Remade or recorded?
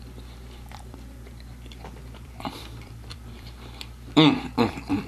remade